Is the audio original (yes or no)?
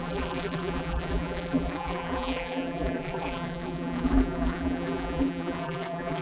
no